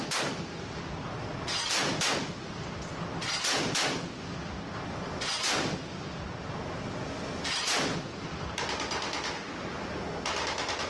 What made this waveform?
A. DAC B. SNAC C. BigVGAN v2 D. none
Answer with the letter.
D